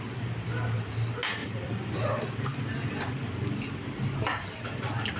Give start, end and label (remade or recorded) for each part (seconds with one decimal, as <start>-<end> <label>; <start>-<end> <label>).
0.0-1.4 recorded; 1.4-2.1 remade; 2.1-5.2 recorded